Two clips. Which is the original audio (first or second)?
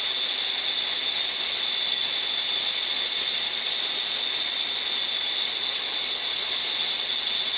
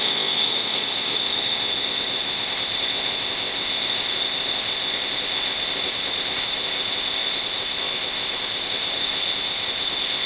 first